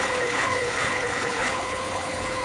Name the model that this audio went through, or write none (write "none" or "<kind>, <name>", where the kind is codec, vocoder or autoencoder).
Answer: codec, HILCodec